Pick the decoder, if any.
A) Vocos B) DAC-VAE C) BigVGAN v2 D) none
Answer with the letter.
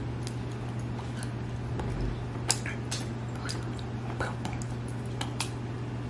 D